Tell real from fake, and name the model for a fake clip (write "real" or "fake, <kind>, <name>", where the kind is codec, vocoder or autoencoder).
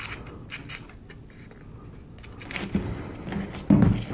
real